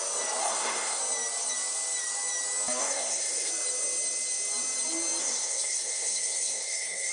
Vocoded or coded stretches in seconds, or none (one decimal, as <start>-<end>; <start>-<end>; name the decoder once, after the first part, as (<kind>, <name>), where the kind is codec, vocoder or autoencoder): 0.4-1.0 (codec, SNAC); 2.8-3.5; 5.2-7.1